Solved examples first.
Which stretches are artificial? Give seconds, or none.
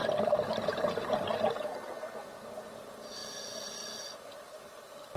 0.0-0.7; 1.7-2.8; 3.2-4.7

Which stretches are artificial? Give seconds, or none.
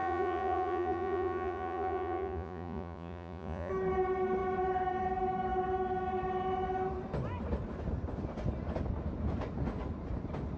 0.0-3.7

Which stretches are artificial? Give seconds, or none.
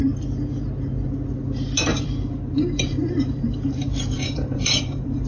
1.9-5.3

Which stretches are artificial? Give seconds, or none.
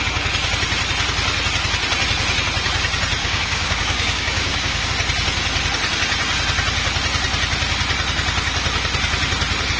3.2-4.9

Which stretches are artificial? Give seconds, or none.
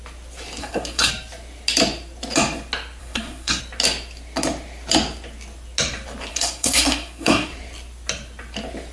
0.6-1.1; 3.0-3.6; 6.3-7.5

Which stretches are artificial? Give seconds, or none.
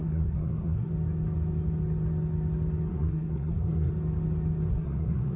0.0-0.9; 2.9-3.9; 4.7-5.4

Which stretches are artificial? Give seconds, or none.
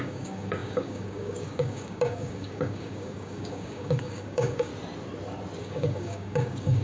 0.0-4.7; 5.6-6.8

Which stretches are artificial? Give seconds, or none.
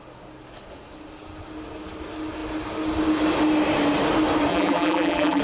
4.5-5.4